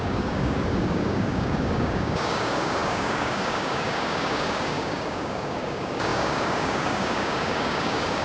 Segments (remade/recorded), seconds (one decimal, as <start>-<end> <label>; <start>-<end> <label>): 0.0-8.2 remade